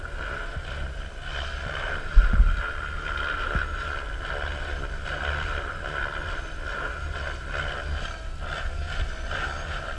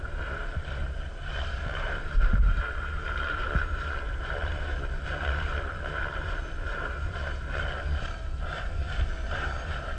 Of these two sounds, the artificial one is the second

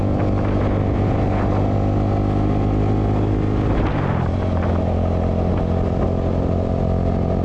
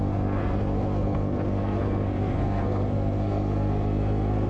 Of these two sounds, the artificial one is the second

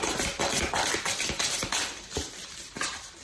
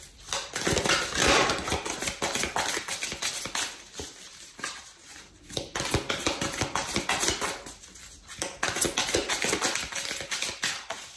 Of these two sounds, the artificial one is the first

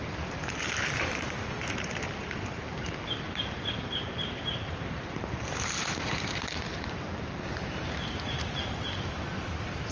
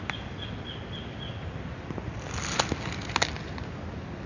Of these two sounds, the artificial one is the first